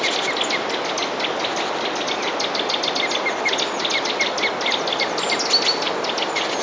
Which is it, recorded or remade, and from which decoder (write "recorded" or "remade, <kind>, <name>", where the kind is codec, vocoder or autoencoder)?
recorded